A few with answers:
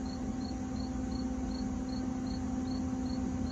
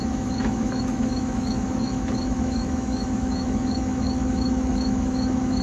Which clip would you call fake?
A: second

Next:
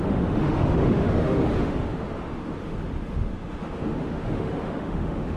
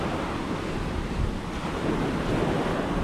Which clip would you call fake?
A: first